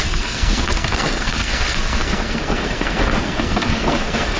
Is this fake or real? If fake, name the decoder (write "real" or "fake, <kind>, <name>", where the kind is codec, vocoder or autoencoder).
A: fake, codec, SNAC